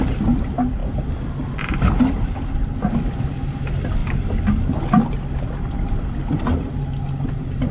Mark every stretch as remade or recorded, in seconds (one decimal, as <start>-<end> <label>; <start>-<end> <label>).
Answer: 0.0-7.7 recorded